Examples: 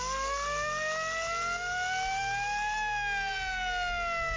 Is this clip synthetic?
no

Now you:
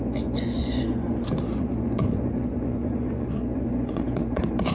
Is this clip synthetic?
yes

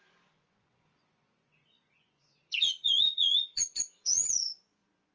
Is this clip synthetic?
yes